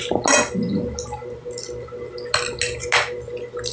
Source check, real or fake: real